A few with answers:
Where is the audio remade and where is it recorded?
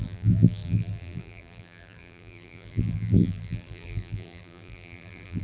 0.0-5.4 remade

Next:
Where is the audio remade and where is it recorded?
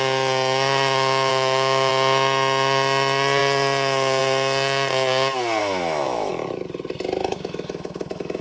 0.0-1.3 recorded; 1.3-1.9 remade; 1.9-5.6 recorded; 5.6-6.3 remade; 6.3-7.2 recorded; 7.2-8.4 remade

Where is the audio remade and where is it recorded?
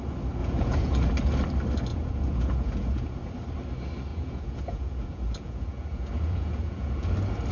0.0-0.4 recorded; 0.4-1.1 remade; 1.1-1.9 recorded; 1.9-3.2 remade; 3.2-4.1 recorded; 4.1-7.1 remade; 7.1-7.5 recorded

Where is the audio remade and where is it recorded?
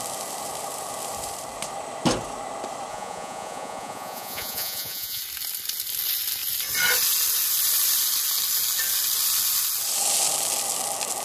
0.0-2.9 recorded; 2.9-5.2 remade; 5.2-11.2 recorded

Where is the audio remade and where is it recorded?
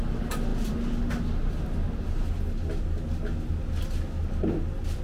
0.0-5.0 recorded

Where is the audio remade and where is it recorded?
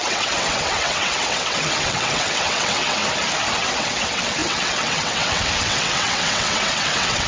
0.0-3.0 remade; 3.0-3.6 recorded; 3.6-7.3 remade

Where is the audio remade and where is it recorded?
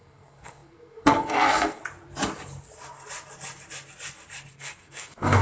0.0-1.8 remade; 1.8-4.5 recorded; 4.5-5.4 remade